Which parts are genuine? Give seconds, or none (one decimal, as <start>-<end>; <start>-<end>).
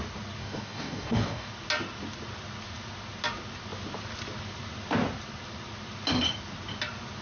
0.0-0.4; 1.5-7.2